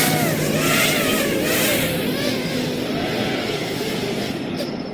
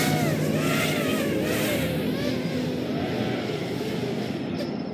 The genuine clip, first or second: second